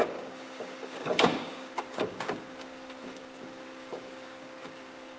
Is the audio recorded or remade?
remade